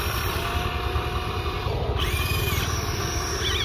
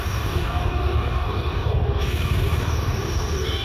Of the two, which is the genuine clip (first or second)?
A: first